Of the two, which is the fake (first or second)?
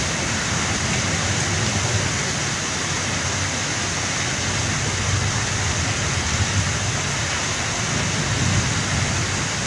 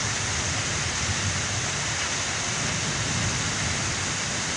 second